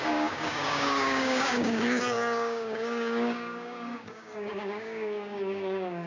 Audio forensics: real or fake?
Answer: fake